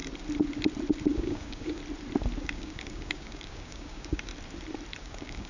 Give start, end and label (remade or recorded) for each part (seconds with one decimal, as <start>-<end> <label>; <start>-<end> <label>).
0.0-1.1 recorded; 1.1-1.8 remade; 1.8-2.4 recorded; 2.4-4.3 remade; 4.3-5.0 recorded; 5.0-5.5 remade